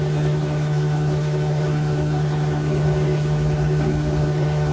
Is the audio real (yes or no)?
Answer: no